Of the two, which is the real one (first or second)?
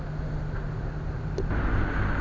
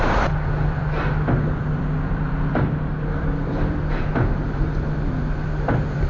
first